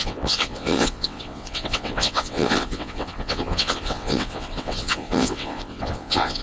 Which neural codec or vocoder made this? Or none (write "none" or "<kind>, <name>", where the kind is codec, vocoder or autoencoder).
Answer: vocoder, WaveNeXt